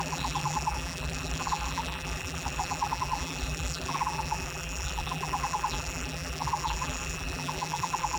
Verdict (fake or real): fake